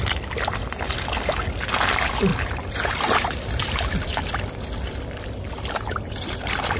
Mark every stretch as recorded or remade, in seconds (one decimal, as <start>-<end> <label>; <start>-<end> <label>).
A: 0.0-2.3 recorded; 2.3-6.8 remade